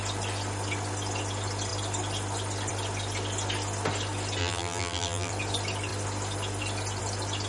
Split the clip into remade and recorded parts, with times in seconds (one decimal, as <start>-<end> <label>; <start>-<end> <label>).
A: 0.0-4.4 recorded; 4.4-5.3 remade; 5.3-7.5 recorded